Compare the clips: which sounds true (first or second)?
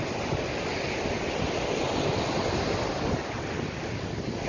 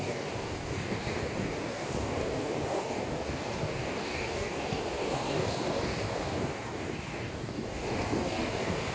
first